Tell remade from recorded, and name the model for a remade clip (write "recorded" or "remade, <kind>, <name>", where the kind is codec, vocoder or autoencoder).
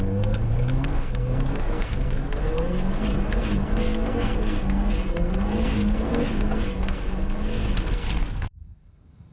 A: remade, codec, SNAC